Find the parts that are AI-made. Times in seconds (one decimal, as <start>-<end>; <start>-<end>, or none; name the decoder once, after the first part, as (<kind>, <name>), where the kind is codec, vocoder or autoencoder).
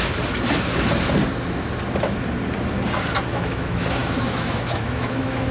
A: 3.3-5.5 (autoencoder, DAC-VAE)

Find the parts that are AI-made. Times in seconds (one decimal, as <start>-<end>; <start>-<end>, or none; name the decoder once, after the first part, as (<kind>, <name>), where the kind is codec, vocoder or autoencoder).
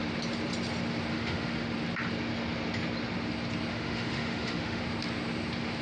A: 1.1-1.7 (autoencoder, DAC-VAE); 3.7-4.8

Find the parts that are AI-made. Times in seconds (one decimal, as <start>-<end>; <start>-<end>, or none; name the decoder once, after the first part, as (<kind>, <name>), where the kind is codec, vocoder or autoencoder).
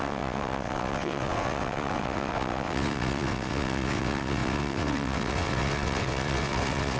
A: 0.0-7.0 (vocoder, WaveNeXt)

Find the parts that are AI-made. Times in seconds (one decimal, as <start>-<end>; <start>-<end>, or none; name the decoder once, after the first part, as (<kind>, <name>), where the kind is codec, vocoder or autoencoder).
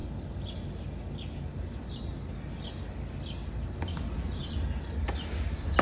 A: none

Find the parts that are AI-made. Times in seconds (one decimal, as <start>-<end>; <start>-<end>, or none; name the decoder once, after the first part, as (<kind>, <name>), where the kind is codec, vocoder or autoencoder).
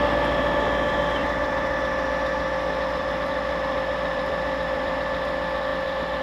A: 1.2-4.9 (vocoder, BigVGAN v2); 5.7-6.2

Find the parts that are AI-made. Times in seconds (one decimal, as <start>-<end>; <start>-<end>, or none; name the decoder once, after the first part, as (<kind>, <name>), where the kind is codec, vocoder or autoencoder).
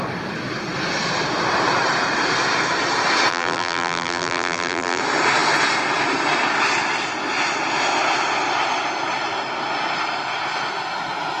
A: 3.3-5.0 (vocoder, BigVGAN v2)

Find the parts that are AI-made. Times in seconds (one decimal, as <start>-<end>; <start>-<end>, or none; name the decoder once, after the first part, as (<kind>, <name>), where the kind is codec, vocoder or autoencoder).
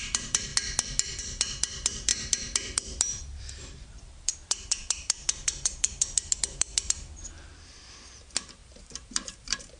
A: 0.0-0.5 (vocoder, BigVGAN v2); 1.2-9.8